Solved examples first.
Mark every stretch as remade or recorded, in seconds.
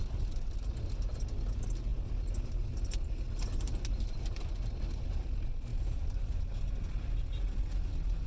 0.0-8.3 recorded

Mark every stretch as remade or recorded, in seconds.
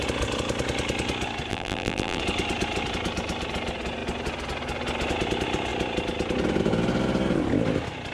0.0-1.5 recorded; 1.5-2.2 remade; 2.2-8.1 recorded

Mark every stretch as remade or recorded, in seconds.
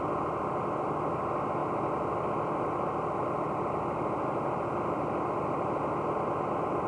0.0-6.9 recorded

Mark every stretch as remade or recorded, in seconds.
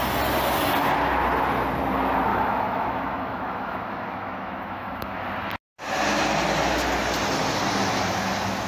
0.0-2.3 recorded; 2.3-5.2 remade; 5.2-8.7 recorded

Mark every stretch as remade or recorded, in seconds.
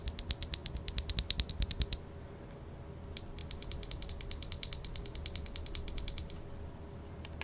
0.0-7.4 recorded